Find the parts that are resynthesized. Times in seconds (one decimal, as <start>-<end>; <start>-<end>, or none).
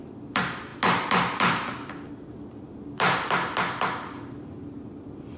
none